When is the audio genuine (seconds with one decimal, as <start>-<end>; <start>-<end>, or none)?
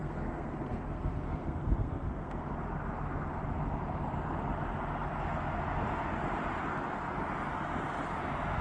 2.5-8.6